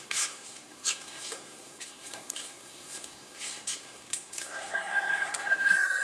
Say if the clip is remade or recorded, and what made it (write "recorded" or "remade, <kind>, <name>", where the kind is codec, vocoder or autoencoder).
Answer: remade, codec, SNAC